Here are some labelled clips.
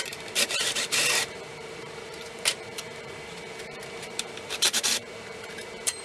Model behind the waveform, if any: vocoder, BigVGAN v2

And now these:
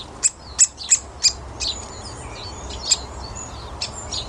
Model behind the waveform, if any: none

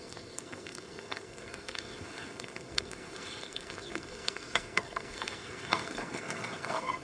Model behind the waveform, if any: codec, SNAC